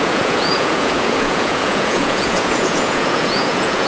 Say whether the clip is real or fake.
fake